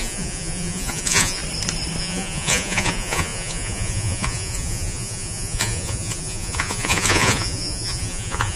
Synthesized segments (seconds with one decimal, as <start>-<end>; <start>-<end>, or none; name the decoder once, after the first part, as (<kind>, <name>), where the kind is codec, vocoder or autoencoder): 0.0-1.4 (vocoder, Vocos); 2.0-8.6